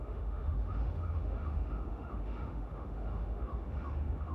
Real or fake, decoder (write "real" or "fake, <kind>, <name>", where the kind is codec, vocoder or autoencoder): fake, autoencoder, DAC-VAE